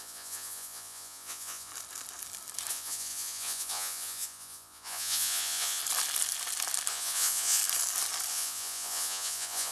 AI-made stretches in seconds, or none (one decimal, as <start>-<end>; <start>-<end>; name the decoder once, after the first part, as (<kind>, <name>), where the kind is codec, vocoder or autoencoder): 0.0-1.7 (vocoder, Vocos); 2.7-5.8; 6.9-7.6; 8.3-9.7